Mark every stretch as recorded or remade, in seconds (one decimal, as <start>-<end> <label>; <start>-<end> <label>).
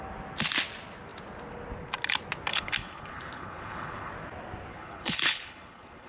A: 0.0-2.5 recorded; 2.5-4.1 remade; 4.1-4.7 recorded; 4.7-6.1 remade